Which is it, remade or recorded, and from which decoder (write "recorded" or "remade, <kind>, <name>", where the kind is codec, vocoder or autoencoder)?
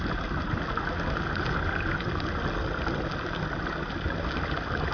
recorded